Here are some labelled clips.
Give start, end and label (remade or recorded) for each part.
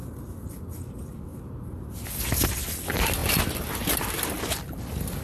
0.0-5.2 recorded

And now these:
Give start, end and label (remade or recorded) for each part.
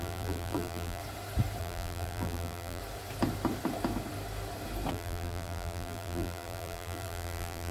0.0-1.0 remade; 1.0-1.6 recorded; 1.6-2.8 remade; 2.8-4.9 recorded; 4.9-7.7 remade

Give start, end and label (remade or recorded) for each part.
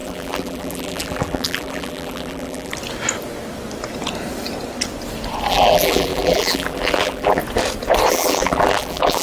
0.0-2.7 remade; 2.7-5.5 recorded; 5.5-7.4 remade; 7.4-8.1 recorded; 8.1-9.2 remade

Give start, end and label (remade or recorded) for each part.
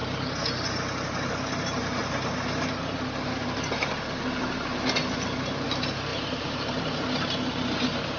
0.0-6.1 recorded; 6.1-6.8 remade; 6.8-8.2 recorded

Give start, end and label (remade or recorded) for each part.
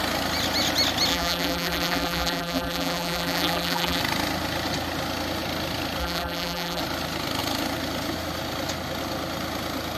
0.0-1.1 recorded; 1.1-4.0 remade; 4.0-6.0 recorded; 6.0-6.8 remade; 6.8-10.0 recorded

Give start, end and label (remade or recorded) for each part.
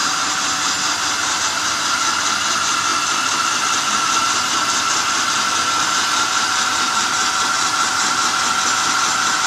0.0-1.4 remade; 1.4-9.5 recorded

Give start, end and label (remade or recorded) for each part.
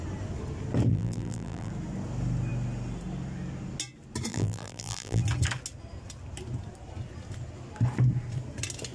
0.0-0.9 recorded; 0.9-1.7 remade; 1.7-4.3 recorded; 4.3-5.2 remade; 5.2-8.9 recorded